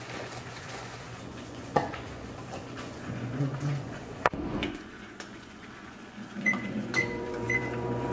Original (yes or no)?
no